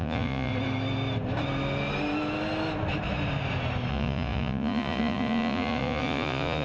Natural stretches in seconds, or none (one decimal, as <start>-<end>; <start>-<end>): 0.5-3.9